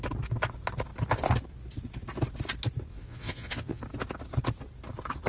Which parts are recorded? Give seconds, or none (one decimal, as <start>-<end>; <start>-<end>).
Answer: 0.0-2.9; 3.8-5.3